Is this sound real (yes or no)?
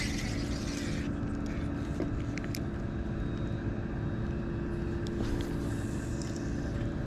yes